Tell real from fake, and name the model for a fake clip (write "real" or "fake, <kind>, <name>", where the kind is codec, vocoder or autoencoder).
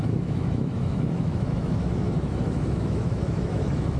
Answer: fake, autoencoder, DAC-VAE